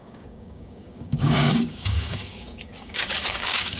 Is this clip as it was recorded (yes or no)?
no